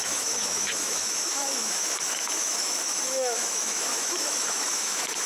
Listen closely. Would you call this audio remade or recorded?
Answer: remade